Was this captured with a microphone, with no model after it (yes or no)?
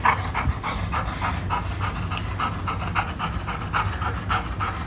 yes